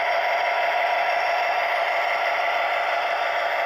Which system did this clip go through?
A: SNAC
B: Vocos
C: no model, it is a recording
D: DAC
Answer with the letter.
C